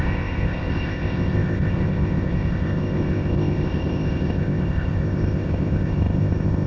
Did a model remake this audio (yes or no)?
yes